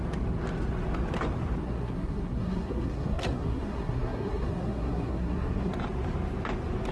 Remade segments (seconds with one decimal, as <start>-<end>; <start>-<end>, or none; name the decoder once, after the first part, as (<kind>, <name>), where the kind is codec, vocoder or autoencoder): 1.6-5.7 (codec, SNAC)